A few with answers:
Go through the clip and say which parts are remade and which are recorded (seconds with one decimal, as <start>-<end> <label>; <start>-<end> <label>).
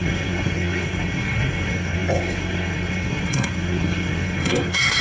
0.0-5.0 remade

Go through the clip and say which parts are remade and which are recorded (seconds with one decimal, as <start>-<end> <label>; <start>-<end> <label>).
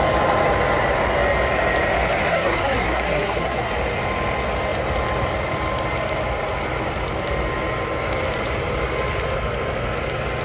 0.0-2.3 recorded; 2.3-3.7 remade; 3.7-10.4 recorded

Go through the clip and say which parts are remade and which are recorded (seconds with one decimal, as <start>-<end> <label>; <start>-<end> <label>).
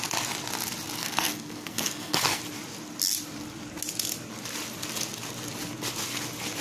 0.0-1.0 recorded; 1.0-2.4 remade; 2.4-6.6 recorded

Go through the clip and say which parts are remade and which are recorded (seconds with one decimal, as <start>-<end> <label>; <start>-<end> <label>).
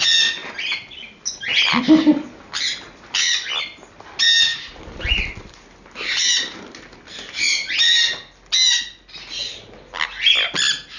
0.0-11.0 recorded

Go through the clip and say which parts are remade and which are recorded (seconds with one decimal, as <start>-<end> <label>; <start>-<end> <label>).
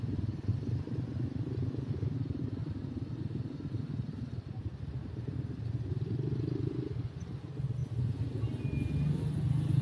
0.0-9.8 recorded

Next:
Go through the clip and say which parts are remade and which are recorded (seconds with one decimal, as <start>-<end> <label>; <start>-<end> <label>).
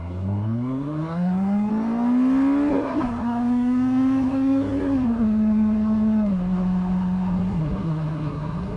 0.0-1.7 remade; 1.7-2.7 recorded; 2.7-8.8 remade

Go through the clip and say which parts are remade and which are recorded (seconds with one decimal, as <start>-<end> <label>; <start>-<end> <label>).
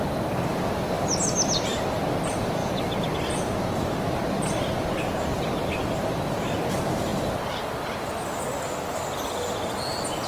0.0-10.3 recorded